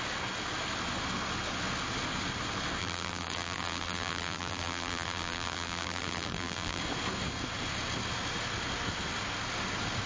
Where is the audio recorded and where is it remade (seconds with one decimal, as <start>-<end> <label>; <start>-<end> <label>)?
0.0-2.8 recorded; 2.8-6.8 remade; 6.8-10.1 recorded